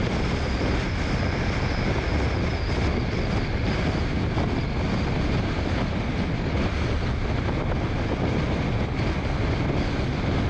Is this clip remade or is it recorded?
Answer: recorded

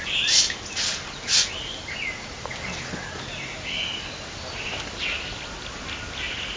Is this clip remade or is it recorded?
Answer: recorded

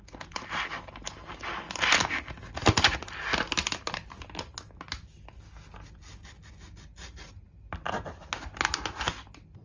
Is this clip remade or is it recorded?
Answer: recorded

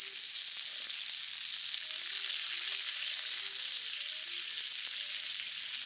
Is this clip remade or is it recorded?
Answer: recorded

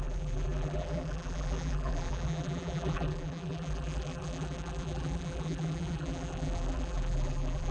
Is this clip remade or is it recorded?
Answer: remade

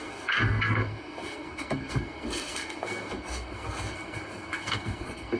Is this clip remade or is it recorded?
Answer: remade